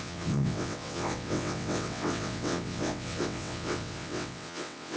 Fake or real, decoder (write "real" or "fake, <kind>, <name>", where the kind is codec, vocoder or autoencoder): fake, vocoder, WaveNeXt